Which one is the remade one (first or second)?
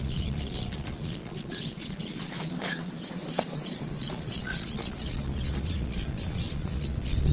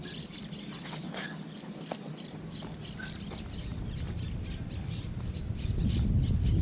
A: first